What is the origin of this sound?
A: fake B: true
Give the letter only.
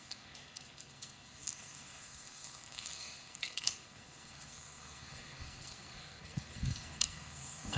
A